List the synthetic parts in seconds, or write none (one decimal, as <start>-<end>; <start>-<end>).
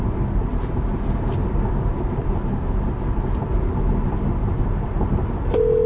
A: none